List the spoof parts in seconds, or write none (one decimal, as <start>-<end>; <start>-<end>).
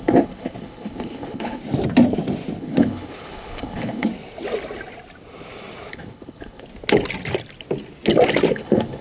0.0-1.6; 2.6-4.1; 5.9-6.6; 8.5-9.0